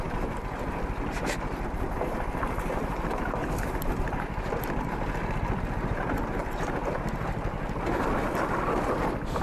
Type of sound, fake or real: real